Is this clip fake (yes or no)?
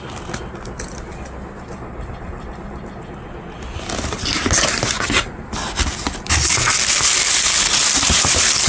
no